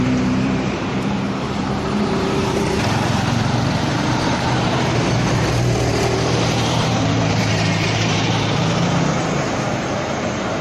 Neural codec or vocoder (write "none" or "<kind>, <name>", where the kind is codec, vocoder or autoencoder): vocoder, BigVGAN v2